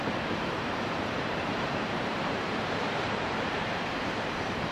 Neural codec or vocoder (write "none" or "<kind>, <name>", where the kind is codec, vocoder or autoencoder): vocoder, BigVGAN v2